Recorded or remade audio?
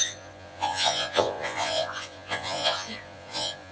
remade